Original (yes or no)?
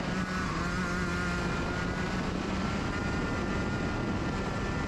yes